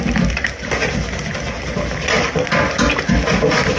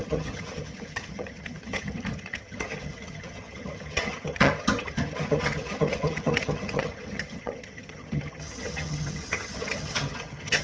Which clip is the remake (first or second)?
second